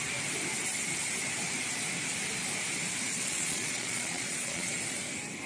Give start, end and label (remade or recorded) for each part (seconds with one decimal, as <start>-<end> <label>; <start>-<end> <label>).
0.0-3.1 recorded; 3.1-4.7 remade; 4.7-5.5 recorded